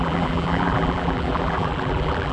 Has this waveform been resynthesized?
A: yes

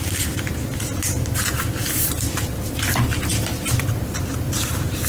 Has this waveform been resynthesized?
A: yes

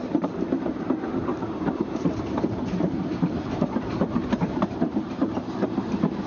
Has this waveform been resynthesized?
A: yes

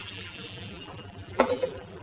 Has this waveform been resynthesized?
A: yes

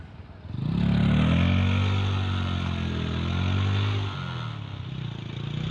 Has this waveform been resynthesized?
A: no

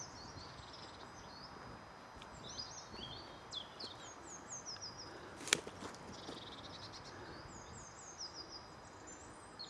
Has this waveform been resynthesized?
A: no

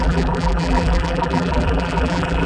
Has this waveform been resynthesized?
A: yes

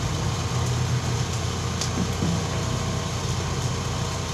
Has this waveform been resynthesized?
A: no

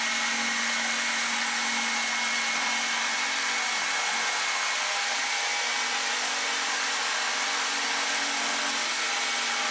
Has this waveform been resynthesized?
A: no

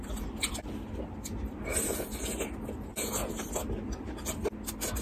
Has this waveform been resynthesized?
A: no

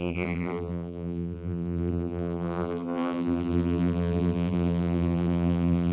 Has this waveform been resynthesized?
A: yes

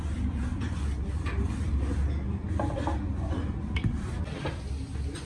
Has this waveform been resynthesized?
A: yes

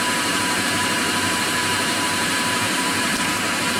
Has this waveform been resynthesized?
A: yes